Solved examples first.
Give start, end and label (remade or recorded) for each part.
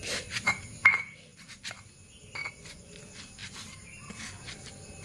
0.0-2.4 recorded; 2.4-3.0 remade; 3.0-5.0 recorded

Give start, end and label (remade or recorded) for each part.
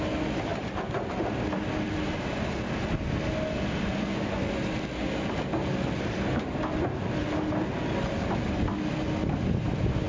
0.0-10.1 recorded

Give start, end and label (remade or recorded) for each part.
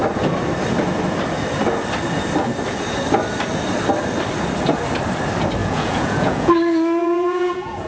0.0-5.6 recorded; 5.6-6.5 remade; 6.5-7.0 recorded; 7.0-7.9 remade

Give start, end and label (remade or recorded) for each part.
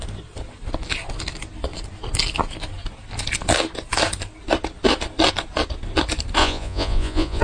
0.0-6.4 recorded; 6.4-7.4 remade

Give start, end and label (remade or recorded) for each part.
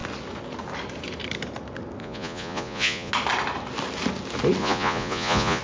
0.0-2.0 recorded; 2.0-3.1 remade; 3.1-4.6 recorded; 4.6-5.6 remade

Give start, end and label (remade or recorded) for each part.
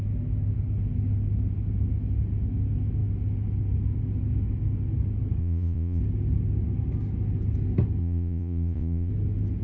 0.0-5.4 recorded; 5.4-6.0 remade; 6.0-8.0 recorded; 8.0-9.1 remade; 9.1-9.6 recorded